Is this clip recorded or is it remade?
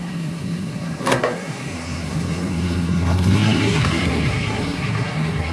remade